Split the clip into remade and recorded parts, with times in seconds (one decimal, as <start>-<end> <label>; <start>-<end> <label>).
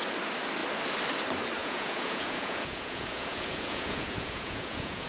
0.0-1.6 recorded; 1.6-5.1 remade